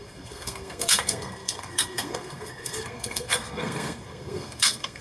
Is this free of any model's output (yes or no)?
no